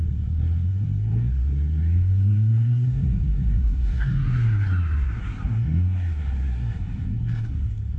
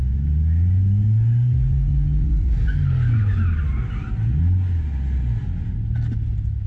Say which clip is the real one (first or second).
second